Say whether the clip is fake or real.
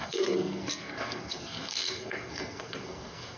fake